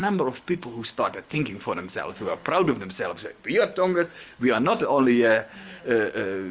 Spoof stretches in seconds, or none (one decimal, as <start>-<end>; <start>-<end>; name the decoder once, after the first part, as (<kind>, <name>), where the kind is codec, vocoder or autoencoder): 0.0-2.7 (codec, HILCodec); 3.7-5.8